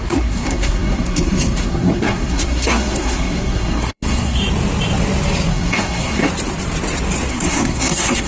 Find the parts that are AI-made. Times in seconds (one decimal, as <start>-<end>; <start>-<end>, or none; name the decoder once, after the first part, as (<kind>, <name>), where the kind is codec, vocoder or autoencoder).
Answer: 0.0-4.4 (codec, SNAC); 5.5-6.2; 7.3-8.3